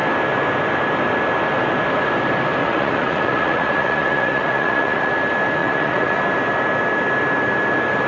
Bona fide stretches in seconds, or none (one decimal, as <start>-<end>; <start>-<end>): 0.0-2.6; 5.1-5.6; 6.2-8.1